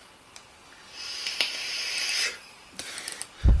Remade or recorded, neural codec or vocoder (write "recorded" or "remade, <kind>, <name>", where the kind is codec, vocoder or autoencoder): remade, vocoder, BigVGAN v2